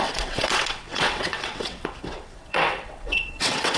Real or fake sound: fake